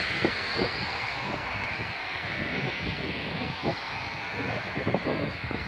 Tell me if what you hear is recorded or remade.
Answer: remade